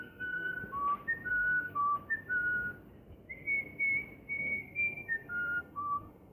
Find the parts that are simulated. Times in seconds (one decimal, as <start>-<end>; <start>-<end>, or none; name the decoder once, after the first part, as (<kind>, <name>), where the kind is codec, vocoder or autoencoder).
0.0-0.6 (codec, SNAC); 1.3-1.8; 4.4-6.3